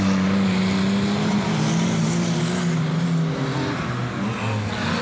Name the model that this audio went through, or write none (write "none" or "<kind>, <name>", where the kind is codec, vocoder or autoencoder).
none